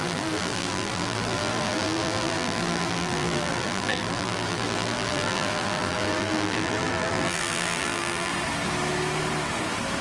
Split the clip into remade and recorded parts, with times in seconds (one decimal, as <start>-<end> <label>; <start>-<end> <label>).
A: 0.0-8.3 remade; 8.3-10.0 recorded